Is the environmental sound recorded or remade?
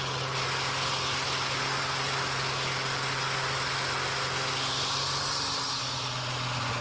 recorded